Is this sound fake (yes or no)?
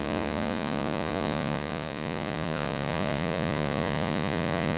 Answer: yes